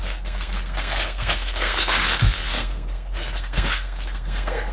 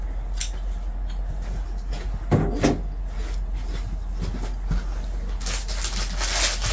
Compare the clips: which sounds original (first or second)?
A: second